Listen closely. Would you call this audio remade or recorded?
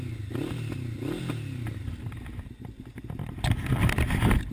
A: recorded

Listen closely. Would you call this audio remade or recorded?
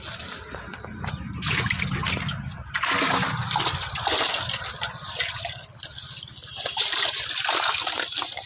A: recorded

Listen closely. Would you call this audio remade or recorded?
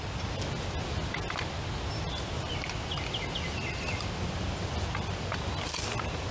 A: recorded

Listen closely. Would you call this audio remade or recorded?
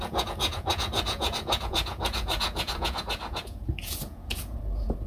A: remade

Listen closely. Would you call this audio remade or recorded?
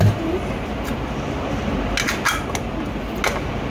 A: recorded